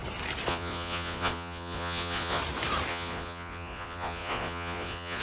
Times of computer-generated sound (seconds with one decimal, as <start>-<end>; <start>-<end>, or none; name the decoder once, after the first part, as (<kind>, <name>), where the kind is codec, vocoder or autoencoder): 0.5-2.4 (vocoder, Vocos); 2.9-5.2